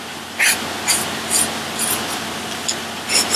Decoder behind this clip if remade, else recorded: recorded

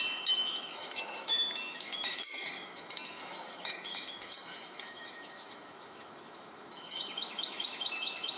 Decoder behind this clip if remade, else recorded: remade, autoencoder, DAC-VAE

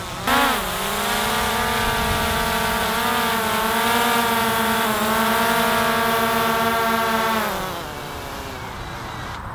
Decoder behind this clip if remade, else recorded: recorded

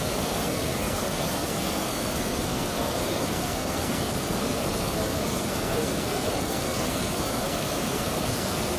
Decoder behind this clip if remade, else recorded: remade, codec, SNAC